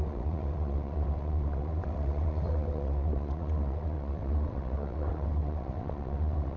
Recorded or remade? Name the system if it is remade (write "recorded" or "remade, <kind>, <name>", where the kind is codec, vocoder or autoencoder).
remade, vocoder, WaveNeXt